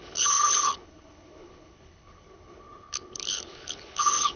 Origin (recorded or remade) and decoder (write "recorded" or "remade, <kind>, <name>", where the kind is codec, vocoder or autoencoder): remade, codec, HILCodec